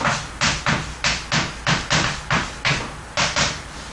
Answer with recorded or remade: recorded